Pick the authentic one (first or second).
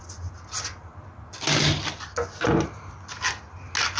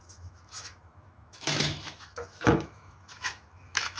first